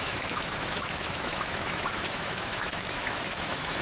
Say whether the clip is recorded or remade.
remade